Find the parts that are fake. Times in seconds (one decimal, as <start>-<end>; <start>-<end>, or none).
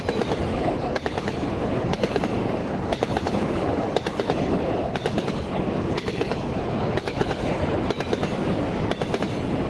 0.5-2.2; 2.6-7.8